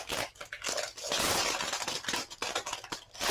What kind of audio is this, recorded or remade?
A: recorded